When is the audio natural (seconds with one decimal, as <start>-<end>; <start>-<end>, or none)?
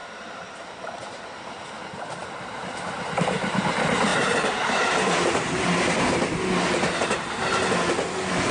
1.2-4.1; 6.0-8.5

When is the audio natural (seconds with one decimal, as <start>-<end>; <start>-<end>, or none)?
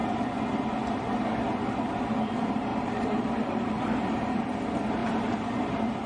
0.0-2.7; 4.4-5.0; 5.5-6.1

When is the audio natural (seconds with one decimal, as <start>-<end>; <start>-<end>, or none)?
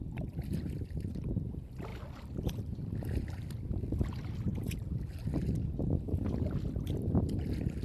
0.0-7.8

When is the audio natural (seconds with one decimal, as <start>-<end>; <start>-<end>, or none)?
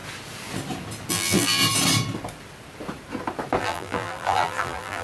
0.0-1.1; 1.6-3.6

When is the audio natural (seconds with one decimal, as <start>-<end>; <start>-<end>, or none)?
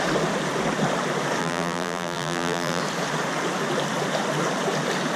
0.0-1.4; 2.8-5.2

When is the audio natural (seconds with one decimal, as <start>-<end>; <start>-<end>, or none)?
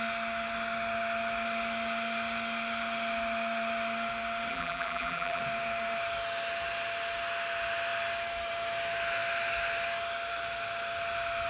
0.0-4.5; 5.4-11.5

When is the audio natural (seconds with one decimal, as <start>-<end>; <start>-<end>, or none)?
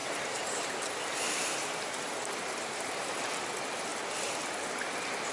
3.2-5.3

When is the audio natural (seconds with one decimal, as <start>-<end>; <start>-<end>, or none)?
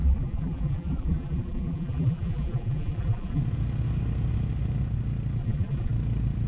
3.4-5.4; 5.9-6.5